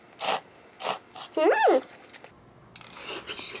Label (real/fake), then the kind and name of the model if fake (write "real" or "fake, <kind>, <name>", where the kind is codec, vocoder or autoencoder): real